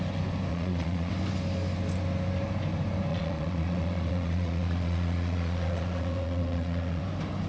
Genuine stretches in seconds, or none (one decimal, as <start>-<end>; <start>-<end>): 0.0-0.5; 1.1-3.1; 7.0-7.5